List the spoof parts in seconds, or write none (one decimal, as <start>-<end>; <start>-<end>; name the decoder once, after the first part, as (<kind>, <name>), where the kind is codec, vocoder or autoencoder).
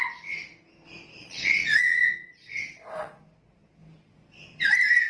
1.2-3.2 (vocoder, Vocos)